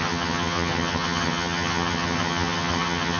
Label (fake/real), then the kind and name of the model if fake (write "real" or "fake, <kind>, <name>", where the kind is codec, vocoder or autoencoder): fake, vocoder, HiFi-GAN